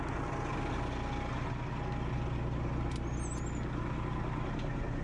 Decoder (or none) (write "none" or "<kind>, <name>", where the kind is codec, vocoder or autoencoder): none